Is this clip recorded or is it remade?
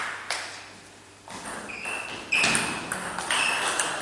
recorded